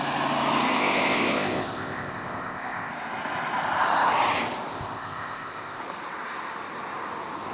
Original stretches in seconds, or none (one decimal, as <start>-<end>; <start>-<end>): 0.0-0.7; 2.9-4.7; 5.8-7.5